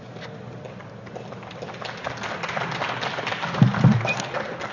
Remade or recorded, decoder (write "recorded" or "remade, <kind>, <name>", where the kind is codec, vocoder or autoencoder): recorded